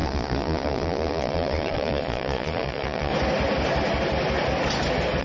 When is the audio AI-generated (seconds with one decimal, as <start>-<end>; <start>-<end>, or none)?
0.0-3.1